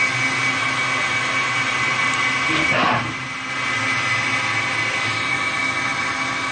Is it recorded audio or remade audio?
recorded